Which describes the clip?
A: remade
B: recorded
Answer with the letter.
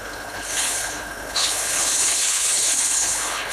A